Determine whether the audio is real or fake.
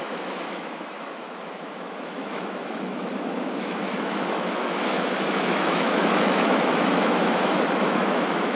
fake